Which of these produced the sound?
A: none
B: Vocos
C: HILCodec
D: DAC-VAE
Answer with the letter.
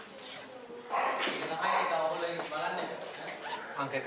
A